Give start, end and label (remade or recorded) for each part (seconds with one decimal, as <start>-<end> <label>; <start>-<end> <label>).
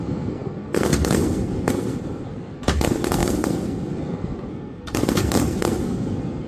0.0-6.5 remade